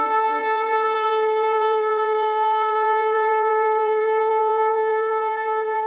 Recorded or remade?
remade